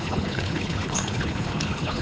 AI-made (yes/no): yes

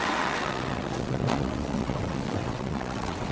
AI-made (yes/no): yes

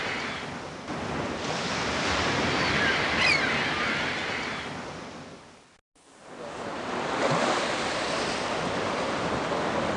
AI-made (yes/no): no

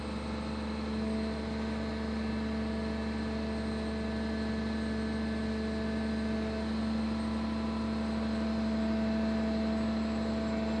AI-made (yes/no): no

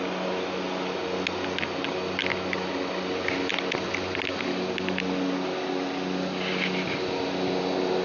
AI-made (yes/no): no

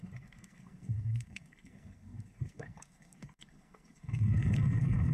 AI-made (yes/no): yes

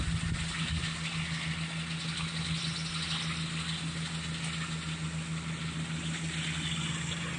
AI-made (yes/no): no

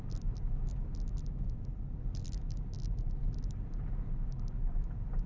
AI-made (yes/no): no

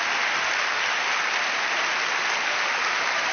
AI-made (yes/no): no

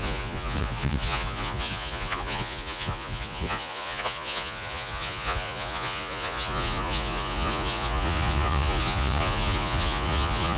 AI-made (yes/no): yes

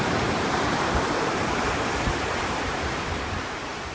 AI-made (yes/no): yes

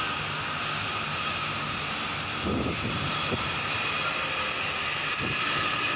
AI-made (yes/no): no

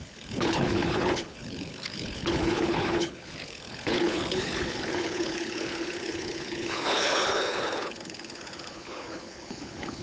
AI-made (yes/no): yes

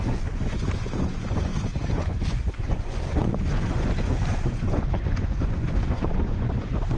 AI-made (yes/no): yes